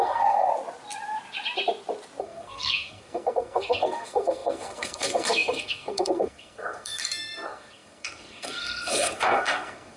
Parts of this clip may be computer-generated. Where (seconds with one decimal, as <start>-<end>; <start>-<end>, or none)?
0.0-0.5; 2.2-10.0